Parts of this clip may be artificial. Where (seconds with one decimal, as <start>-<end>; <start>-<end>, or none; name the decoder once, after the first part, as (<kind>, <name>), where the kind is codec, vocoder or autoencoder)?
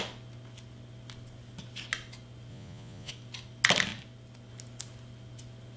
2.5-3.1 (vocoder, Vocos)